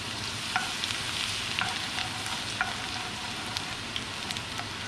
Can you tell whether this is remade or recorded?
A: recorded